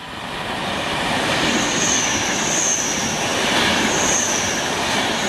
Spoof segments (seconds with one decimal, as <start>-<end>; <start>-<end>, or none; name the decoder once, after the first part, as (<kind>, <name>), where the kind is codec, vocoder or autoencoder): 0.0-5.3 (vocoder, BigVGAN v2)